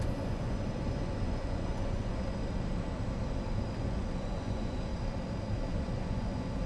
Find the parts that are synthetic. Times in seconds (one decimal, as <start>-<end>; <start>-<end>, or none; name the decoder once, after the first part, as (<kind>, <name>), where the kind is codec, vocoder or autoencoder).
0.0-2.4 (vocoder, Vocos); 3.8-4.9; 5.7-6.7